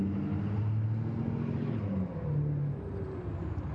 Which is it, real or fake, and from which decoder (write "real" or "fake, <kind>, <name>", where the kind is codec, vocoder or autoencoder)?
real